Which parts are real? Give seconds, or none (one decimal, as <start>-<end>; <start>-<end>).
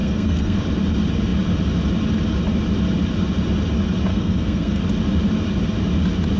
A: 0.6-4.1; 4.8-6.4